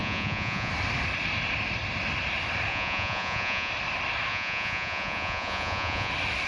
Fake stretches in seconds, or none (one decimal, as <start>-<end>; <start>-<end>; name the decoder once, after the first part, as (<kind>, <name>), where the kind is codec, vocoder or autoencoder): 0.0-0.7 (vocoder, Vocos); 2.7-3.7; 4.3-6.1